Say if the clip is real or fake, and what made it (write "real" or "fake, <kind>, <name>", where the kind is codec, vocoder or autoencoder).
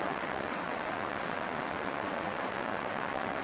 fake, vocoder, WaveNeXt